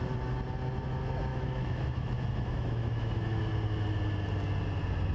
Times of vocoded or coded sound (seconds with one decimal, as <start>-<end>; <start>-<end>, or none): 1.3-3.4